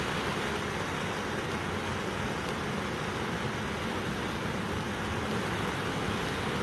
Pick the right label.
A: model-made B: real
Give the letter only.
B